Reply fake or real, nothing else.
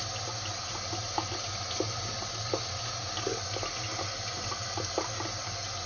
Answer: real